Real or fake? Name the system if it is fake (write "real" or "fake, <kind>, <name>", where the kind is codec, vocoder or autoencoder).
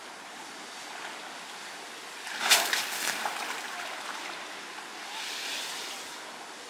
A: real